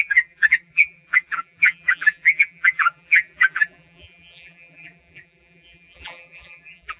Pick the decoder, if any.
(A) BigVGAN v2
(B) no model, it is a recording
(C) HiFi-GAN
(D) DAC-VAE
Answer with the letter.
A